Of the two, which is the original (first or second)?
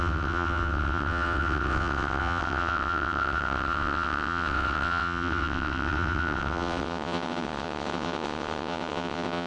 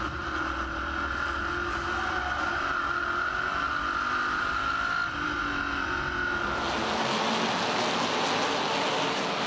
second